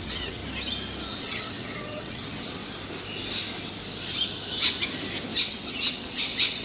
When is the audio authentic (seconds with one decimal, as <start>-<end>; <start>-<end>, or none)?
0.4-1.1; 2.6-5.4